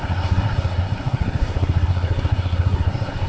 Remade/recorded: remade